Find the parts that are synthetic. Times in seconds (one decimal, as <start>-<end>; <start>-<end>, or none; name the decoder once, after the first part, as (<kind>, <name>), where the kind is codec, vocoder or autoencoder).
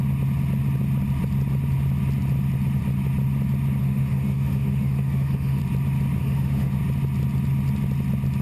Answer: 3.8-5.6 (autoencoder, DAC-VAE); 6.2-6.8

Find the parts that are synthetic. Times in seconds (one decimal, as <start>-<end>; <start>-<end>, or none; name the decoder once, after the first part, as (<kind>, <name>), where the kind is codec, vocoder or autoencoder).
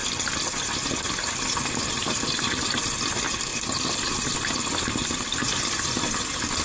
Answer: 2.0-2.6 (vocoder, BigVGAN v2); 3.5-5.8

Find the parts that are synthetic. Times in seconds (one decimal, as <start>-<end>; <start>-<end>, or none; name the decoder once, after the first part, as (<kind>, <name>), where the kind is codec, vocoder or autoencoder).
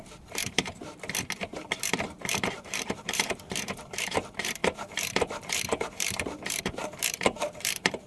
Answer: 0.0-0.8 (vocoder, BigVGAN v2); 1.6-8.1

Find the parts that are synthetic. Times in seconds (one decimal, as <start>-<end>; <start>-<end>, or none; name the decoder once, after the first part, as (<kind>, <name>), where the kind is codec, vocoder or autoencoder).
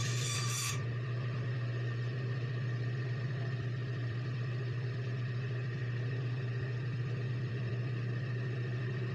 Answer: 0.0-9.1 (vocoder, BigVGAN v2)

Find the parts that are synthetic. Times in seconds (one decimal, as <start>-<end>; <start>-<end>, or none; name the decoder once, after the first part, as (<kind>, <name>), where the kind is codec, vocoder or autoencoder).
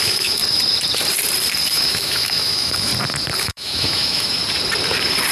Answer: 0.0-0.4 (autoencoder, DAC-VAE); 1.7-2.9; 3.4-4.4